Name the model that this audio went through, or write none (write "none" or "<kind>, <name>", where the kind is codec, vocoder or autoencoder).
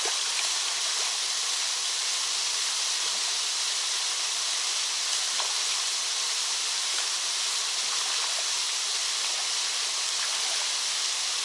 none